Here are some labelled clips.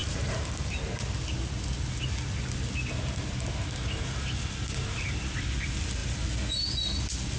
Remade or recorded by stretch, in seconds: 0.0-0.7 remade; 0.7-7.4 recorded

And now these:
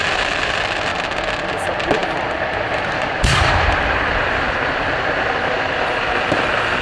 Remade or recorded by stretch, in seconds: 0.0-0.9 remade; 0.9-1.5 recorded; 1.5-6.8 remade

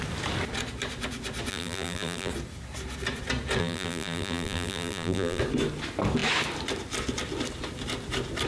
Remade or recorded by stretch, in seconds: 0.0-1.5 recorded; 1.5-2.3 remade; 2.3-3.6 recorded; 3.6-5.4 remade; 5.4-8.5 recorded

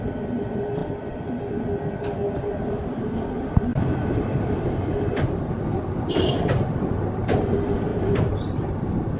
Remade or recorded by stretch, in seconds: 0.0-3.7 recorded; 3.7-4.7 remade; 4.7-7.9 recorded; 7.9-9.2 remade

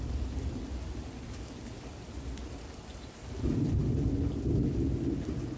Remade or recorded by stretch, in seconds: 0.0-2.9 recorded; 2.9-3.8 remade; 3.8-5.6 recorded

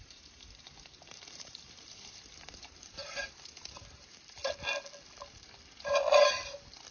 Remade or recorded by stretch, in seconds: 0.0-4.4 remade; 4.4-6.9 recorded

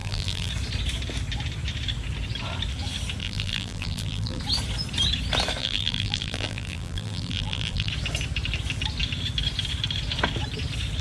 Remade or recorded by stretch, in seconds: 0.0-0.5 remade; 0.5-3.2 recorded; 3.2-4.4 remade; 4.4-5.6 recorded; 5.6-7.9 remade; 7.9-11.0 recorded

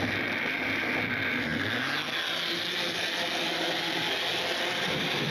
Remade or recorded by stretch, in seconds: 0.0-5.3 recorded